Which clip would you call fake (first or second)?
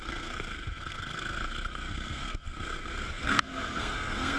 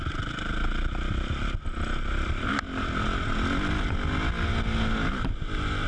first